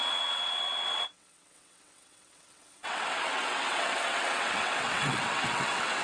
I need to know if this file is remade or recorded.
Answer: remade